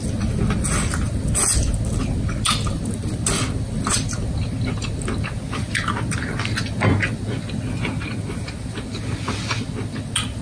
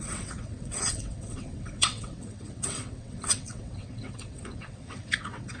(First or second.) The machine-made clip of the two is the second